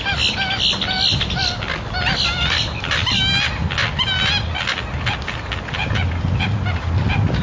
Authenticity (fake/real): real